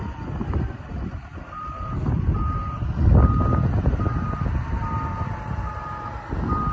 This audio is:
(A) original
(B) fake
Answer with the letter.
A